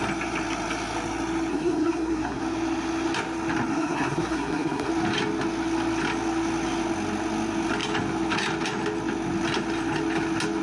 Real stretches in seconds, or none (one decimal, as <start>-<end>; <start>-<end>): 0.0-1.5; 2.4-3.7; 4.9-10.6